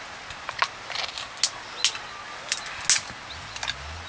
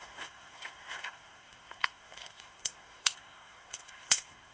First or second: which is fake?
second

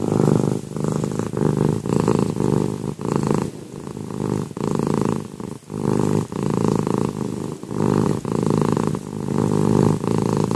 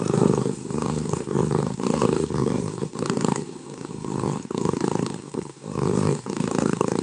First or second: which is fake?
second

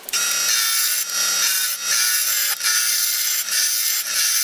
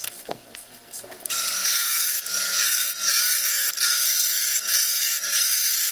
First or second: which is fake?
second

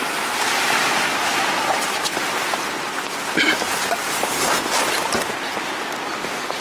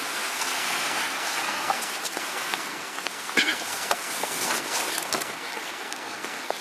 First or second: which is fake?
second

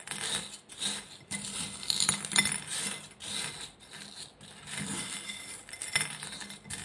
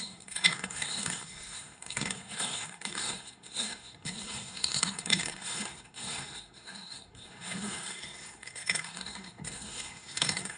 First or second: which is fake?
second